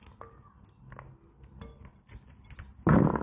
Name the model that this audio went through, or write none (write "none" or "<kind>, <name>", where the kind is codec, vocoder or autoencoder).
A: none